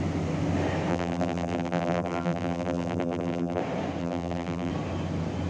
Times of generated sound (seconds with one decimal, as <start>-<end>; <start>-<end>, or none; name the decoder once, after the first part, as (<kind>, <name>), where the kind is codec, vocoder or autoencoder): 0.9-3.6 (vocoder, BigVGAN v2); 4.0-4.7